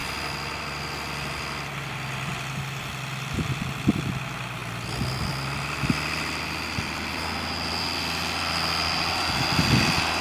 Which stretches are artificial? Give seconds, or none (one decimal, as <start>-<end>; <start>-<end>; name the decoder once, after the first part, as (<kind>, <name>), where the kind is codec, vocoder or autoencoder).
0.0-10.2 (vocoder, BigVGAN v2)